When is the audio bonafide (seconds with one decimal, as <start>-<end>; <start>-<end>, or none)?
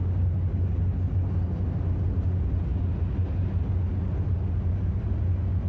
0.0-5.7